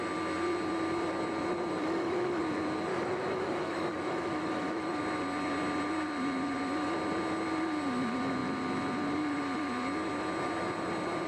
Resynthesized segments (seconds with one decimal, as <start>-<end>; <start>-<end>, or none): 1.8-2.4; 2.9-5.0